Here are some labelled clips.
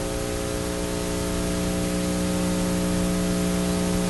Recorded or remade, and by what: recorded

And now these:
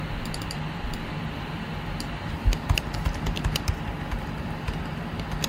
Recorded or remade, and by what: recorded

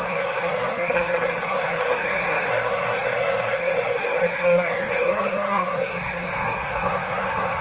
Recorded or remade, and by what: remade, codec, SNAC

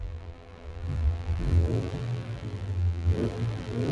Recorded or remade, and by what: remade, vocoder, BigVGAN v2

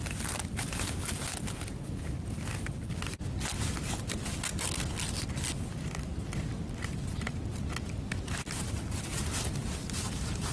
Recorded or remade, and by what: recorded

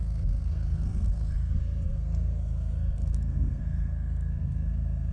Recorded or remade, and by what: remade, codec, SNAC